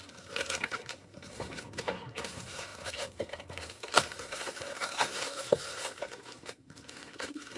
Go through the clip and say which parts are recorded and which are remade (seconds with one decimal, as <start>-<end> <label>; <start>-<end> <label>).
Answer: 0.0-7.6 remade